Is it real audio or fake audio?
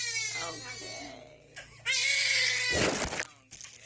real